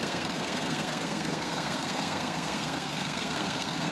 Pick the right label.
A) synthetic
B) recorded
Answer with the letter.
A